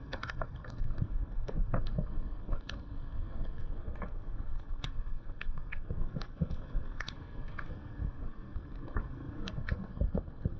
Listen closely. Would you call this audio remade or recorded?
remade